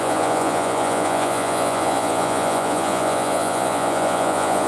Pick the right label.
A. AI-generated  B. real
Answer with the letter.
A